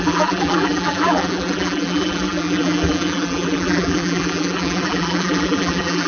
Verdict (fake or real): fake